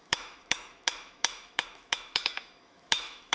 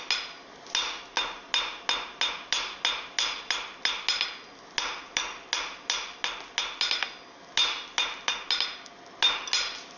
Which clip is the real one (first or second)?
second